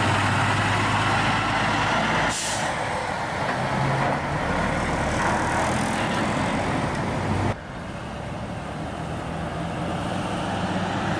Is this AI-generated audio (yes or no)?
no